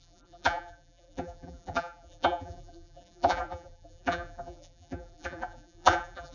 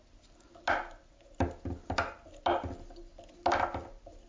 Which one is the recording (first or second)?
second